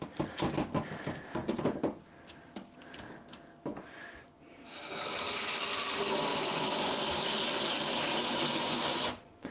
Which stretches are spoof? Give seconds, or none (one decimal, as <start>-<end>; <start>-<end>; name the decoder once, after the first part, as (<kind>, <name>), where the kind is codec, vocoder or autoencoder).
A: 3.7-4.4 (vocoder, Vocos); 6.3-7.0; 8.5-9.5